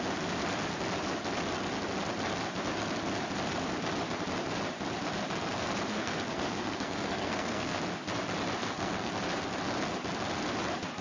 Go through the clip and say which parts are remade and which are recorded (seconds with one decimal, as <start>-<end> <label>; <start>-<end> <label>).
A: 0.0-6.0 recorded; 6.0-7.8 remade; 7.8-8.6 recorded; 8.6-9.1 remade; 9.1-11.0 recorded